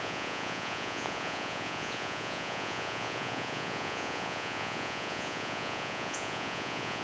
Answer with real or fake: fake